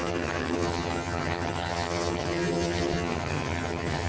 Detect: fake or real fake